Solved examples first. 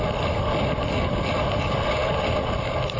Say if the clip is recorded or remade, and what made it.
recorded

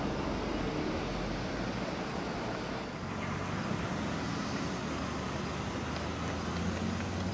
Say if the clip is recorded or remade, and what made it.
recorded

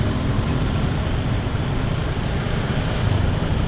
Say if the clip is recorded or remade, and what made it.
remade, vocoder, BigVGAN v2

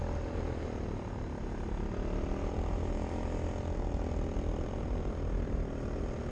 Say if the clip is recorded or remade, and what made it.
recorded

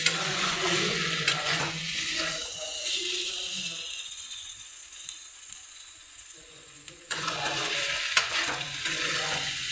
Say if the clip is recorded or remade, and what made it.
remade, vocoder, Vocos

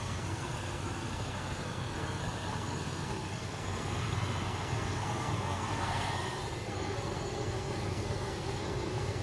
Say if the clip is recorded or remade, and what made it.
remade, codec, SNAC